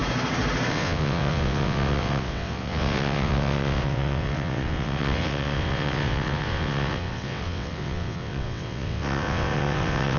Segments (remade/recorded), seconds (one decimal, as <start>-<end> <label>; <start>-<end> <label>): 0.0-0.7 recorded; 0.7-10.2 remade